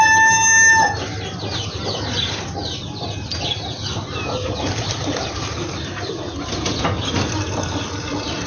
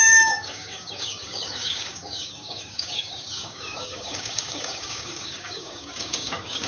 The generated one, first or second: second